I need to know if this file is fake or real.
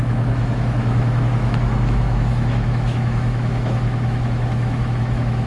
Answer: fake